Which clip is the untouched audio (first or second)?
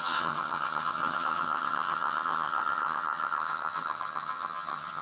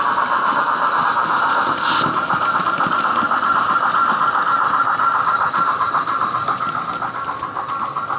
second